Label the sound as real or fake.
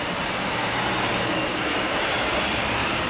fake